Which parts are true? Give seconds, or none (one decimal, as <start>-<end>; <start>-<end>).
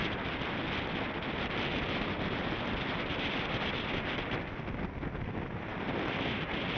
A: 0.0-6.8